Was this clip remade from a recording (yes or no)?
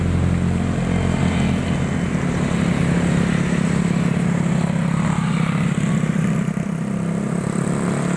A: no